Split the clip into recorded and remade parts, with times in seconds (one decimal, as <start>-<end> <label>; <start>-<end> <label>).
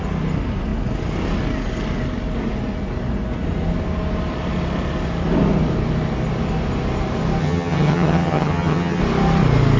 0.0-7.4 recorded; 7.4-9.0 remade; 9.0-9.8 recorded